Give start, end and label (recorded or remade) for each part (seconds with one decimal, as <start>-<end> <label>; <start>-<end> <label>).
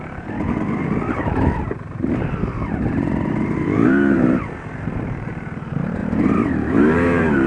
0.0-7.5 remade